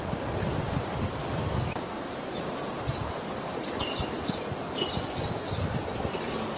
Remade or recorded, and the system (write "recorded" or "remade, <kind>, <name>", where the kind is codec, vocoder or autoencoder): recorded